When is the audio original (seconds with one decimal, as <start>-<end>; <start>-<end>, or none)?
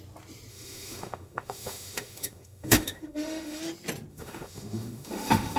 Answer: 0.0-0.5; 3.6-4.1